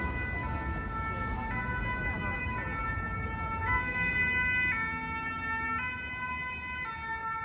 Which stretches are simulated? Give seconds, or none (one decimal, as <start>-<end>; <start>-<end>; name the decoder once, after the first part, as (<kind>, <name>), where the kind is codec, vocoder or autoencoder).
3.6-4.1 (codec, SNAC)